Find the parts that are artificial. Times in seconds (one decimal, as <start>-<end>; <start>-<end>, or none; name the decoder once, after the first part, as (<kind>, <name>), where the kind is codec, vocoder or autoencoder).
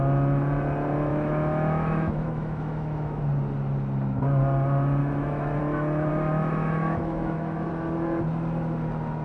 1.1-3.2 (autoencoder, DAC-VAE); 5.0-5.6; 6.1-7.7